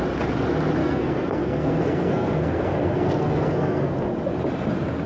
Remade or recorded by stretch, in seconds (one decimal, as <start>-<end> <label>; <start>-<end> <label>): 0.0-0.8 recorded; 0.8-3.9 remade; 3.9-5.1 recorded